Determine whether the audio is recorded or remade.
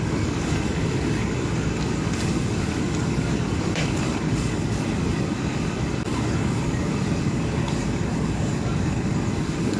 remade